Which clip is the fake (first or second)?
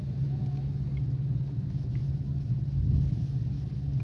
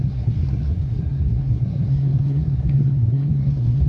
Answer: second